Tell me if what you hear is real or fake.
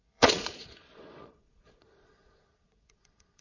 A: fake